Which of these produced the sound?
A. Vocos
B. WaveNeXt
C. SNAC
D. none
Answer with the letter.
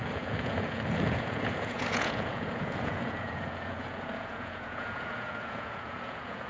A